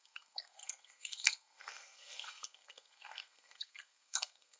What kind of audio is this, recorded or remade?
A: remade